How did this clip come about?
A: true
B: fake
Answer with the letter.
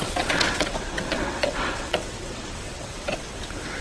B